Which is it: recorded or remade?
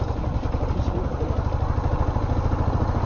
recorded